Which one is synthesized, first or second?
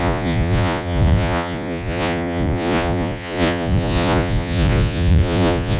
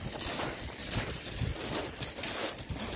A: first